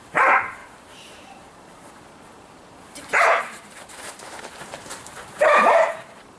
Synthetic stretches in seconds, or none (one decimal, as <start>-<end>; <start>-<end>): 0.0-6.4